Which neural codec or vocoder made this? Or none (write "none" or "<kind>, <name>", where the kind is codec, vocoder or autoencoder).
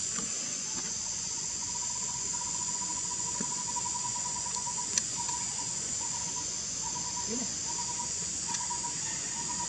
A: vocoder, Vocos